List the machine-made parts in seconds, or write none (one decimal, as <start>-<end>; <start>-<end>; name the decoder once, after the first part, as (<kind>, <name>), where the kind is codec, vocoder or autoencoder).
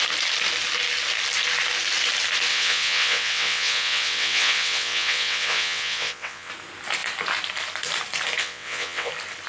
2.5-6.5 (vocoder, WaveNeXt); 8.4-9.1